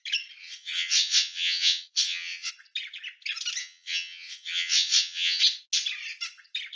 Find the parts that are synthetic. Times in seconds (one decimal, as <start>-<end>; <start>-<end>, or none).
0.4-2.5; 3.6-5.4